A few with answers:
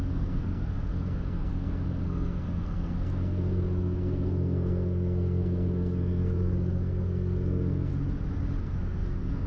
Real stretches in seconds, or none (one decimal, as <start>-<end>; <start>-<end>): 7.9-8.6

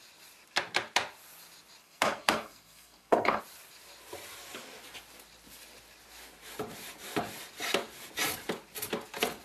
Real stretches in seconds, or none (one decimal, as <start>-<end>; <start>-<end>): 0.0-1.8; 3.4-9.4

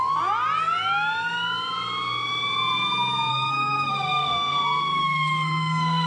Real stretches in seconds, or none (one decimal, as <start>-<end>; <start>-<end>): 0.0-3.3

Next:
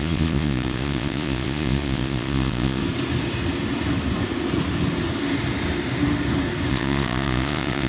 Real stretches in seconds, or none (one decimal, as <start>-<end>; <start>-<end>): 2.8-6.7

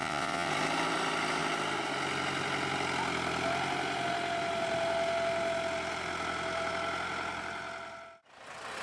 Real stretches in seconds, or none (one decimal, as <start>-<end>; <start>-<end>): 0.5-8.8

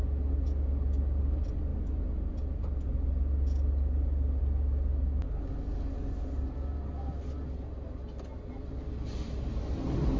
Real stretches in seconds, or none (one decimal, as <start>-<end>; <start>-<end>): 0.0-10.2

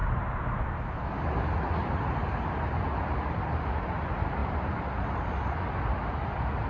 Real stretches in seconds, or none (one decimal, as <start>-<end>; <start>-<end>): 1.3-4.4; 5.2-6.7

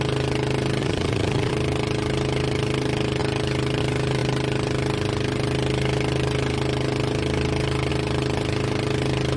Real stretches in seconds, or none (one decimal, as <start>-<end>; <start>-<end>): 0.0-0.8; 1.5-9.4